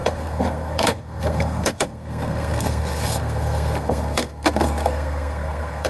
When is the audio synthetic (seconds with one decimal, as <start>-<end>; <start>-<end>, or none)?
0.0-5.9